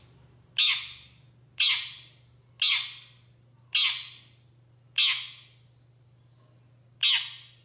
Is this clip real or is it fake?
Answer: real